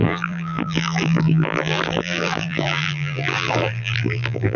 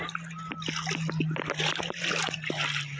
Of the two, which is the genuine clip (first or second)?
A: second